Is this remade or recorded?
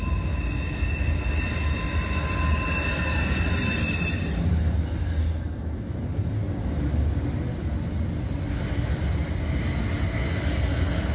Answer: recorded